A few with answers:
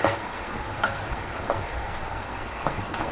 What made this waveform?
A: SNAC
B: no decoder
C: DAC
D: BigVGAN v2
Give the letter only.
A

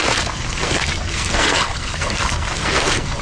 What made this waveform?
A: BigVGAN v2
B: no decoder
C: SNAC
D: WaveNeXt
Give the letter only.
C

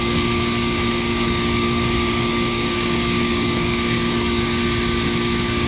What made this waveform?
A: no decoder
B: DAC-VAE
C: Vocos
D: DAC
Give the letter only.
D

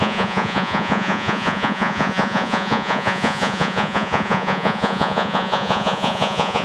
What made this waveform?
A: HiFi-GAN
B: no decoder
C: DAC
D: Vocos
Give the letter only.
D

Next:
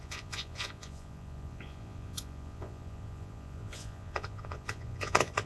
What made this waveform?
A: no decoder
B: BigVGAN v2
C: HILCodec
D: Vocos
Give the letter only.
D